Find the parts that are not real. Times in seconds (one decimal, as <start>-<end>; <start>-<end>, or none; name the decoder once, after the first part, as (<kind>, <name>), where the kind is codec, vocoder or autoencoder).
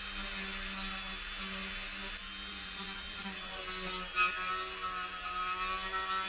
2.5-3.6 (vocoder, Vocos)